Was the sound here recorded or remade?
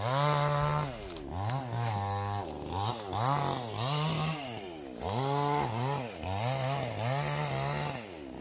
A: recorded